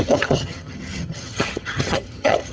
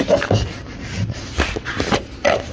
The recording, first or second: second